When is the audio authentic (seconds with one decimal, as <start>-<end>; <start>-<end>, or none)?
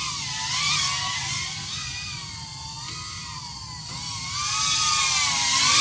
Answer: 0.0-5.8